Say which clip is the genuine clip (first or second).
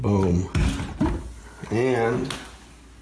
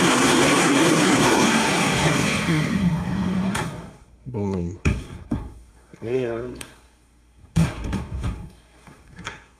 first